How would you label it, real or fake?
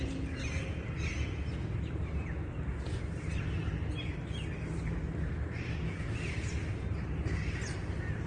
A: real